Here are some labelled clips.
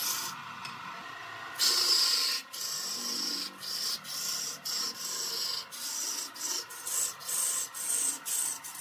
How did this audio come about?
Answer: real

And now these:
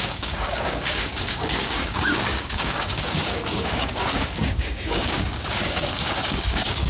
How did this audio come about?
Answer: fake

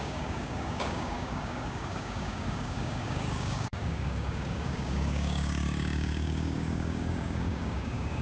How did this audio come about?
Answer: fake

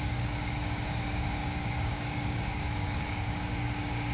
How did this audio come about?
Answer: fake